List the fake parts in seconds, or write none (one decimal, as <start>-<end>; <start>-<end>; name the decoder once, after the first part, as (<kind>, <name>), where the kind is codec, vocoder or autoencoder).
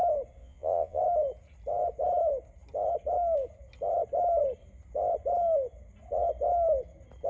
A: 0.4-1.0 (vocoder, Vocos)